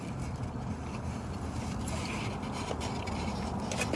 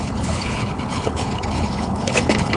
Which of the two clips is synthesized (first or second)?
second